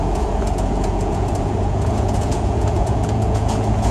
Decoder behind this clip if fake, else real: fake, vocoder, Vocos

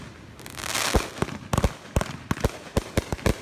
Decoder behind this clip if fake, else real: real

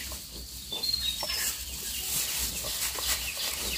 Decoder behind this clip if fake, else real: real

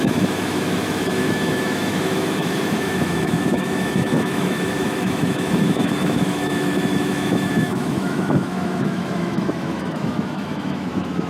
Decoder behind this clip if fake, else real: fake, autoencoder, DAC-VAE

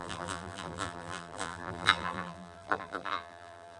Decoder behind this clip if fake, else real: fake, vocoder, BigVGAN v2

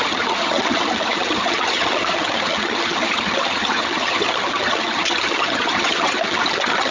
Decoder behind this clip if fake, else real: fake, vocoder, HiFi-GAN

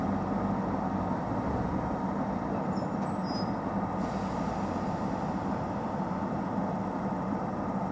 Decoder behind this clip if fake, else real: real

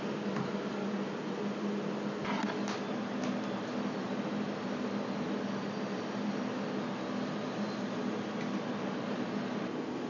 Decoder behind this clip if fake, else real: real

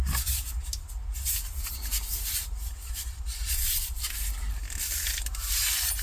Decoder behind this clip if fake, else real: real